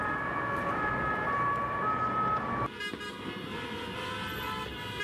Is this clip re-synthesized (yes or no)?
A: no